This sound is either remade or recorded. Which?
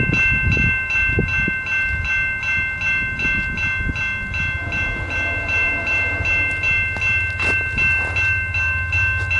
recorded